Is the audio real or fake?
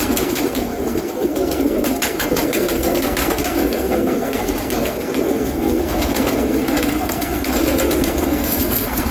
fake